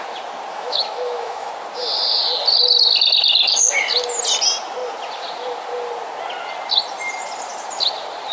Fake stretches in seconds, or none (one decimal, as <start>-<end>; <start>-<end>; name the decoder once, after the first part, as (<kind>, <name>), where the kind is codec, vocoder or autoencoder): 0.5-1.5 (autoencoder, DAC-VAE)